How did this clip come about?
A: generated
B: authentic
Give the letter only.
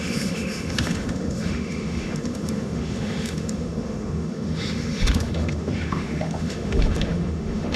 A